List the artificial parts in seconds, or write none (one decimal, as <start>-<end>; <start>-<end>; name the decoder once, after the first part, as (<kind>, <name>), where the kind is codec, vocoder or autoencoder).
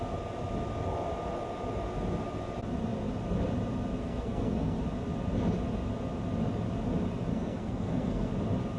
4.0-4.8 (codec, SNAC); 7.3-8.3